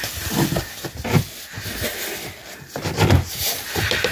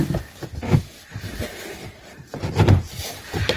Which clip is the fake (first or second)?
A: second